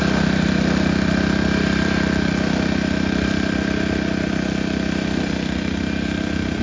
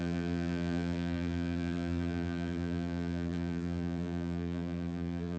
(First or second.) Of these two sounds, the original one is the first